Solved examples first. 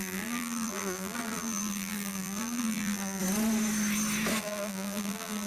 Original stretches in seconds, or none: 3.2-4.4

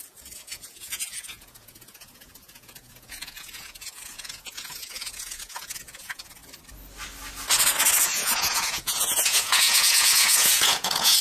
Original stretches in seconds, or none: 6.4-8.0